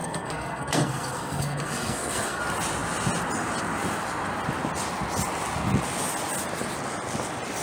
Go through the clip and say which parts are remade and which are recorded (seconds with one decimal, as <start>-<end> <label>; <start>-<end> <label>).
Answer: 0.0-2.4 remade; 2.4-7.6 recorded